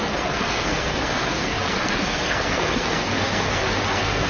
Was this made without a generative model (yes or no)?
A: no